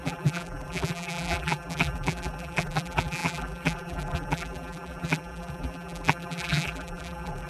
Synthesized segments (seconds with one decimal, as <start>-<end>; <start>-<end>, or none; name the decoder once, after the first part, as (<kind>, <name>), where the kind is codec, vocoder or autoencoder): 0.0-7.5 (vocoder, BigVGAN v2)